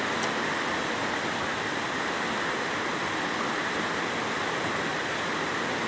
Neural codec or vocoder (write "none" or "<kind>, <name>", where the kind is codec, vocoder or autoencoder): none